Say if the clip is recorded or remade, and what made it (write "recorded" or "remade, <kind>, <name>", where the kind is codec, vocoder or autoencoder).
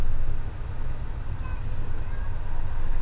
recorded